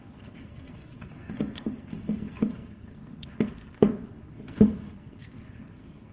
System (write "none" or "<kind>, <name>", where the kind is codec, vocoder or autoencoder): codec, SNAC